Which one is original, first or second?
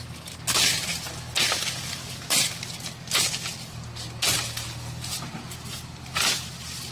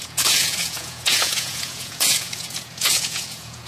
first